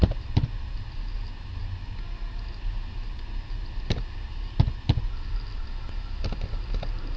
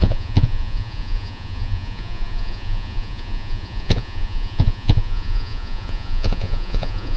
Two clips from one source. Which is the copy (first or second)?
second